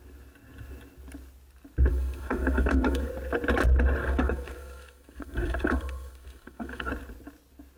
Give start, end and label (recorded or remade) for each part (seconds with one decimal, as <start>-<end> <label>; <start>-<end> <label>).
0.0-1.9 recorded; 1.9-3.1 remade; 3.1-4.0 recorded; 4.0-6.9 remade; 6.9-7.8 recorded